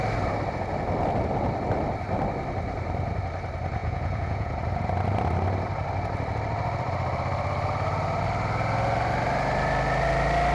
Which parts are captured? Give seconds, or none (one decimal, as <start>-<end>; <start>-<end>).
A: 0.0-3.8; 4.5-10.5